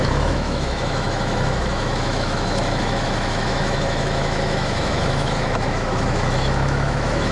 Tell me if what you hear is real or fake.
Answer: fake